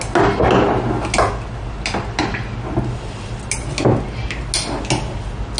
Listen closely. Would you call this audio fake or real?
real